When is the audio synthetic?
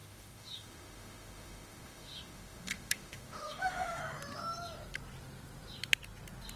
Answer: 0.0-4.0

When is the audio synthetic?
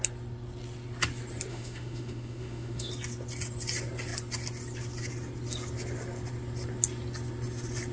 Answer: 1.5-2.9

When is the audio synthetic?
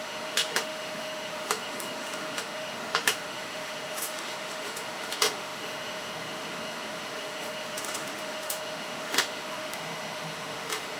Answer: 0.0-11.0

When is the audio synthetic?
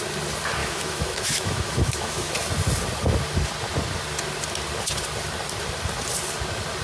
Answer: 0.6-2.3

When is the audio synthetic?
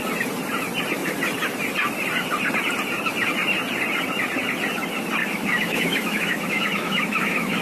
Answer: 5.2-7.6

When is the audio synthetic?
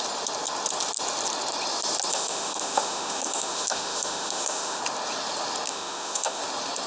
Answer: 2.1-4.8; 5.7-6.4